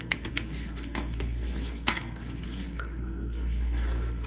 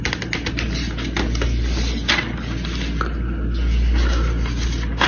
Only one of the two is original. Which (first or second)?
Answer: second